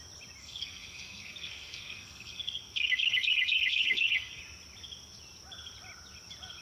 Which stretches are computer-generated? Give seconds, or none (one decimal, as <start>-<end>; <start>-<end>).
0.4-4.4